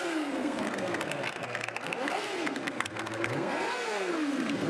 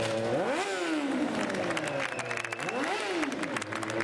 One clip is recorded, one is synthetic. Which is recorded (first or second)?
second